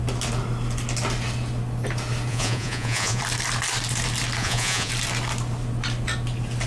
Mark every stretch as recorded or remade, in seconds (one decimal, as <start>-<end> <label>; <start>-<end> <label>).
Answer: 0.0-2.3 recorded; 2.3-3.2 remade; 3.2-4.4 recorded; 4.4-4.9 remade; 4.9-6.7 recorded